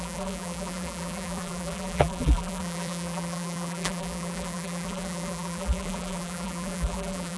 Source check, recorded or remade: remade